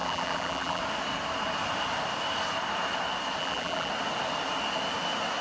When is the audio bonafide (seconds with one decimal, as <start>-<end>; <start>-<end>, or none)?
0.8-3.4; 3.9-5.4